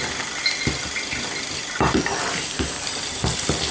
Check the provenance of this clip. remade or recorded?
recorded